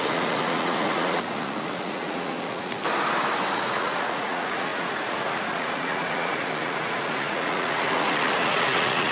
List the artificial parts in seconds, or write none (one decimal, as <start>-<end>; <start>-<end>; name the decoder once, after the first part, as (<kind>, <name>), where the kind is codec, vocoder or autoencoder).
0.0-2.8 (vocoder, Vocos); 3.5-9.1